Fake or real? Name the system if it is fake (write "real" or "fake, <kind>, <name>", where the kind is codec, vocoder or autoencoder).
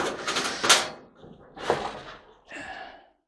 real